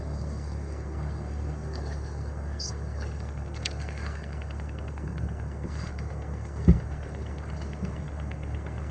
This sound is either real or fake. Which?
fake